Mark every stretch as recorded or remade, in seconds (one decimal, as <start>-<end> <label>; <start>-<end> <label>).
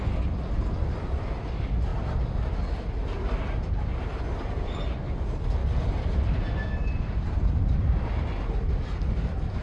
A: 0.0-9.6 recorded